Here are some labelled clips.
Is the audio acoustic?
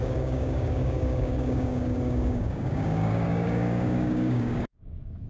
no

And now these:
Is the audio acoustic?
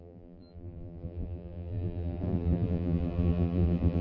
no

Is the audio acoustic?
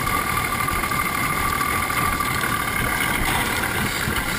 yes